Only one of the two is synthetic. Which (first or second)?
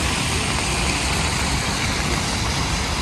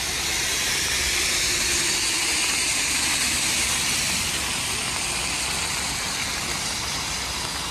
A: first